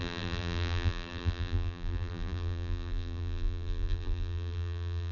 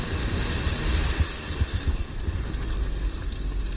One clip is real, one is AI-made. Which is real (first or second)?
second